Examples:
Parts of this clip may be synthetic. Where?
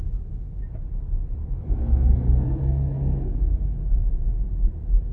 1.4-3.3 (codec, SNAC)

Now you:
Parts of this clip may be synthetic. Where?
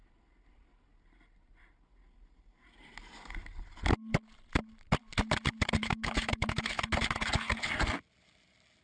5.8-6.8 (autoencoder, DAC-VAE)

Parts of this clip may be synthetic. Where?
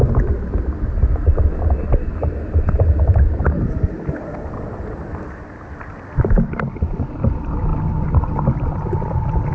none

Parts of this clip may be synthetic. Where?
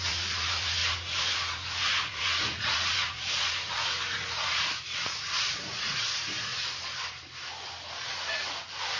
0.0-6.5 (vocoder, Vocos); 8.1-9.0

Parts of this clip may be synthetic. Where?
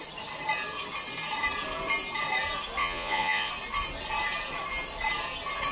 2.8-3.5 (vocoder, Vocos)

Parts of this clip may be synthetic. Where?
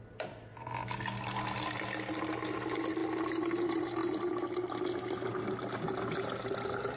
none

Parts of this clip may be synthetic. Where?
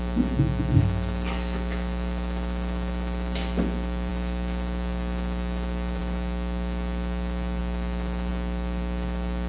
0.7-3.6 (autoencoder, DAC-VAE); 4.1-6.0; 7.6-8.3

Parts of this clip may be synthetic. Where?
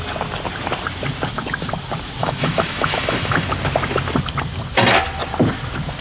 2.2-3.5 (autoencoder, DAC-VAE)